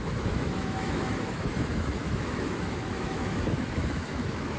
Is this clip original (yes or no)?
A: no